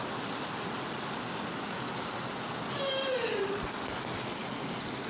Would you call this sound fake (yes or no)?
no